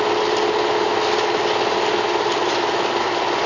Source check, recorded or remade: recorded